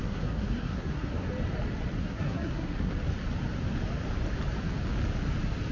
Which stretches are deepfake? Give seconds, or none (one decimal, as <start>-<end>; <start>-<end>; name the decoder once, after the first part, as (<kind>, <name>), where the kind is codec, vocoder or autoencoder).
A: 0.0-1.3 (codec, SNAC); 2.0-2.9